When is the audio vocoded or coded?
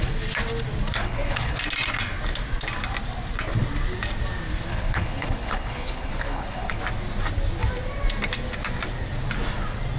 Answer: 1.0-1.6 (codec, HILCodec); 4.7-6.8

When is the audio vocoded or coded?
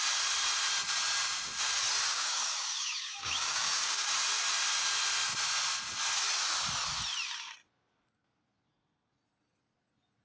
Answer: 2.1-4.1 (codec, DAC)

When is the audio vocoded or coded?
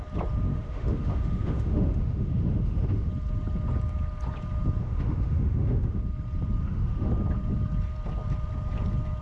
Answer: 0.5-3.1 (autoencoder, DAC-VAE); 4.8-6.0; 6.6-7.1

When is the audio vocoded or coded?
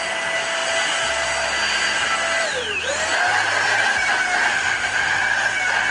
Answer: 4.5-5.2 (autoencoder, DAC-VAE)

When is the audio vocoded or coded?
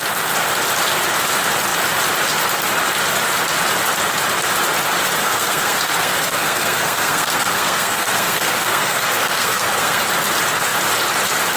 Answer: 5.2-10.0 (codec, SNAC)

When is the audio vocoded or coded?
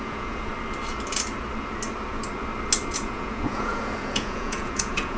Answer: 0.0-0.5 (vocoder, Vocos); 2.9-5.2